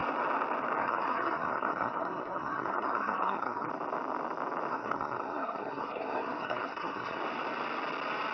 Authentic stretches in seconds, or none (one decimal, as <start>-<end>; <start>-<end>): 0.0-0.8; 3.7-4.7; 7.2-8.3